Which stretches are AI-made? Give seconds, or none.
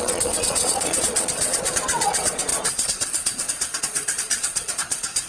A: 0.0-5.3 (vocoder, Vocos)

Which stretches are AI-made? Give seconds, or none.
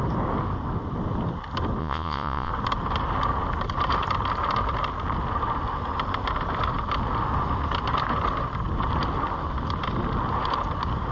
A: 1.8-2.5 (vocoder, Vocos)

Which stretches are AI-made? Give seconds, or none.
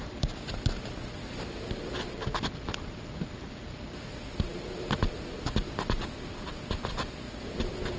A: none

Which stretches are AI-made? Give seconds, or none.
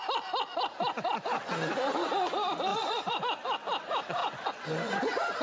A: 2.7-3.2 (vocoder, Vocos); 4.2-4.9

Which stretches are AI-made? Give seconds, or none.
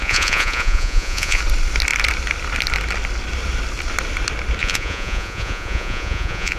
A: 0.0-1.4 (vocoder, Vocos); 4.6-6.6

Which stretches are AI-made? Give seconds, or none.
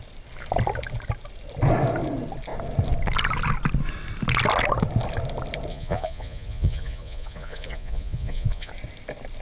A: 5.7-8.7 (vocoder, Vocos)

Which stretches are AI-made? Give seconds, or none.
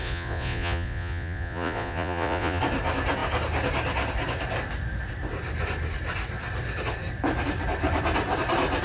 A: 0.0-2.6 (vocoder, Vocos)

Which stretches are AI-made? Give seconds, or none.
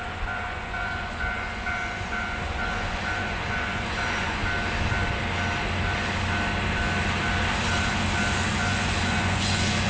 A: 0.0-4.4 (vocoder, Vocos); 8.5-9.9